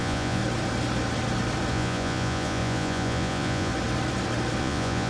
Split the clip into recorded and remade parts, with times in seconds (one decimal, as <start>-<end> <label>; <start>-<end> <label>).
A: 0.0-0.4 remade; 0.4-1.7 recorded; 1.7-3.7 remade; 3.7-4.6 recorded; 4.6-5.1 remade